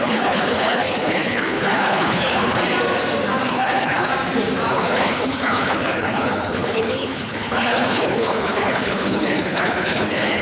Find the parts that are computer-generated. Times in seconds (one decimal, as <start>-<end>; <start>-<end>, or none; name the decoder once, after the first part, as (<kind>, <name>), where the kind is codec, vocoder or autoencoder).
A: 0.0-2.6 (codec, HILCodec); 3.5-4.1; 4.7-10.4